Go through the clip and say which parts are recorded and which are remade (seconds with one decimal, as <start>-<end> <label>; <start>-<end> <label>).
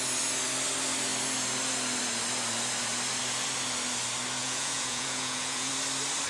0.0-4.4 recorded; 4.4-5.7 remade; 5.7-6.3 recorded